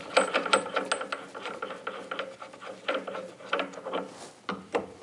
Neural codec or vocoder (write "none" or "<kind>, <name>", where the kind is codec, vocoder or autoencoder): none